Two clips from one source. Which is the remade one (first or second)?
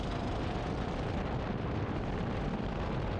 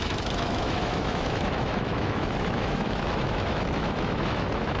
second